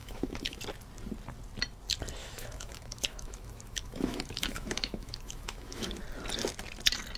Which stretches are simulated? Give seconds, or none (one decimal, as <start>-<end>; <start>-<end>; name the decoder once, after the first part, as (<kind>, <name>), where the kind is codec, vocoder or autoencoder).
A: 0.0-0.6 (autoencoder, DAC-VAE); 2.2-6.0